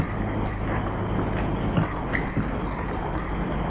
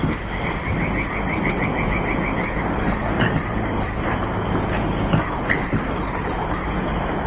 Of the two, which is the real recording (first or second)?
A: first